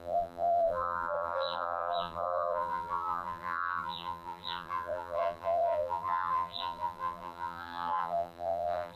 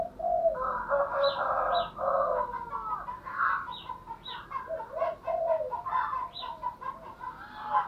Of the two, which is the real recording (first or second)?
second